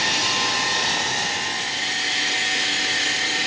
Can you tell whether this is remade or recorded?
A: recorded